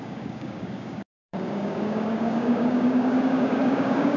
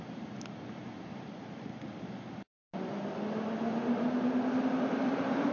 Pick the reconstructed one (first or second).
first